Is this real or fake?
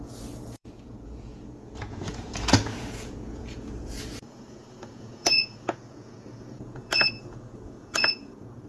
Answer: fake